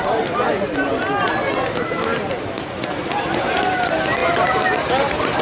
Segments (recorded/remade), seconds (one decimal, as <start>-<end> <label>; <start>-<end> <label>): 0.0-2.1 recorded; 2.1-3.2 remade; 3.2-4.2 recorded; 4.2-4.9 remade; 4.9-5.4 recorded